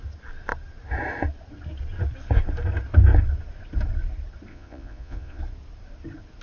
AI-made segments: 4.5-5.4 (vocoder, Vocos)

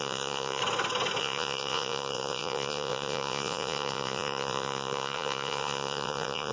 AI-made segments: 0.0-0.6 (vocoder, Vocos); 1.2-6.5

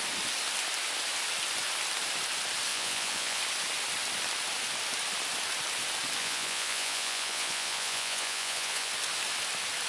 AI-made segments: 2.7-3.4 (vocoder, Vocos); 6.2-8.9